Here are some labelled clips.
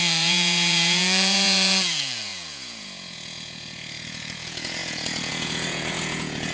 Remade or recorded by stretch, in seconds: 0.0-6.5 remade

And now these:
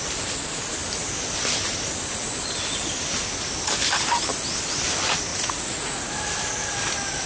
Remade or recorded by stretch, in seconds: 0.0-5.3 recorded; 5.3-6.1 remade; 6.1-7.3 recorded

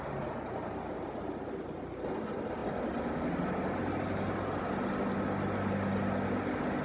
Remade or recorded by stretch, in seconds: 0.0-6.8 recorded

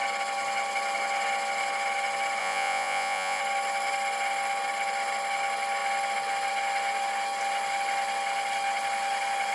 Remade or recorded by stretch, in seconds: 0.0-2.4 recorded; 2.4-3.4 remade; 3.4-9.5 recorded

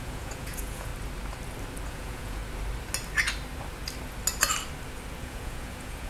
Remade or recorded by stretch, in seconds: 0.0-0.9 remade; 0.9-1.9 recorded; 1.9-2.4 remade; 2.4-5.2 recorded; 5.2-6.1 remade

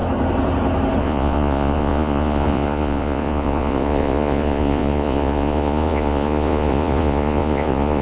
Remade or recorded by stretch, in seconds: 0.0-1.0 recorded; 1.0-8.0 remade

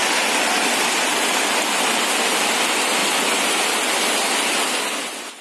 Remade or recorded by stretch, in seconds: 0.0-5.4 recorded